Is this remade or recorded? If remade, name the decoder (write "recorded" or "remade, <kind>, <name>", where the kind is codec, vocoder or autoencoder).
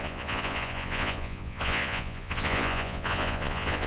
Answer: remade, vocoder, Vocos